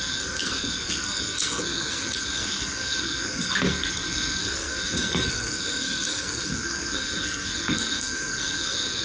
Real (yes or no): no